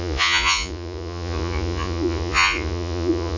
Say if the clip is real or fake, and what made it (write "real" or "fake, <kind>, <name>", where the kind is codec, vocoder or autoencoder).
fake, vocoder, Vocos